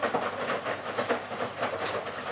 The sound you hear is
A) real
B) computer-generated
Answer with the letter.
A